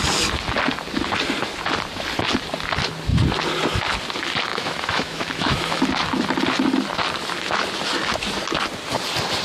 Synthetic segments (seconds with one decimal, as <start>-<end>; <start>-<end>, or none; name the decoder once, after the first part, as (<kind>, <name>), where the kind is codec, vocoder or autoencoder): 4.5-5.8 (autoencoder, DAC-VAE)